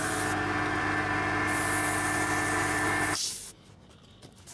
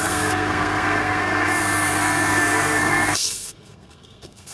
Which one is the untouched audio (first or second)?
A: first